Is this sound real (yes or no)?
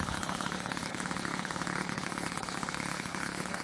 no